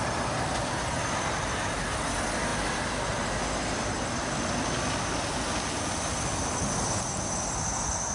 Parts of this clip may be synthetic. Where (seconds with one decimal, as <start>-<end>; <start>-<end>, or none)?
none